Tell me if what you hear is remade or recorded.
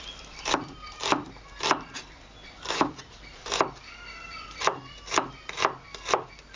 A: remade